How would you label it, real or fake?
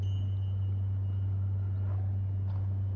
real